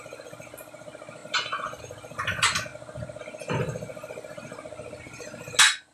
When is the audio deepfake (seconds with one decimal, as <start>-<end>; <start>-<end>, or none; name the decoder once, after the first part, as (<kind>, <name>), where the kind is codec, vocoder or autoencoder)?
none